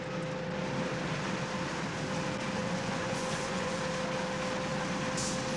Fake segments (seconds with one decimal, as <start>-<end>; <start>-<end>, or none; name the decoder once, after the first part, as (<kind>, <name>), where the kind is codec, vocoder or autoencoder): 2.6-3.8 (vocoder, Vocos)